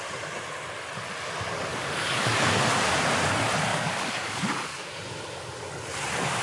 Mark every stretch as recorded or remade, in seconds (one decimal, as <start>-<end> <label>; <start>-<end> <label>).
0.0-1.7 recorded; 1.7-2.5 remade; 2.5-3.7 recorded; 3.7-5.0 remade; 5.0-6.4 recorded